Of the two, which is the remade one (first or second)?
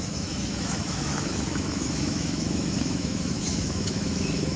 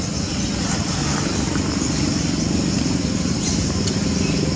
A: first